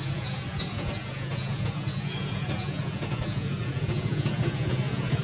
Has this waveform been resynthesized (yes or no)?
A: yes